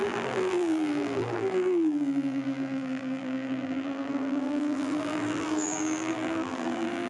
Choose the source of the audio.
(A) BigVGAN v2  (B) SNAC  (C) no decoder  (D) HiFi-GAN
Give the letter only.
A